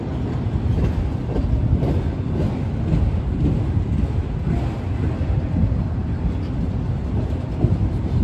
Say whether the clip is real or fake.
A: real